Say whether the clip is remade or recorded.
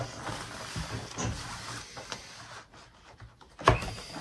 recorded